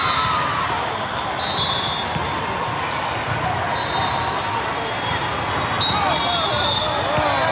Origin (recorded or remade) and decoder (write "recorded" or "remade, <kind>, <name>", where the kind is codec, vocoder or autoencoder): recorded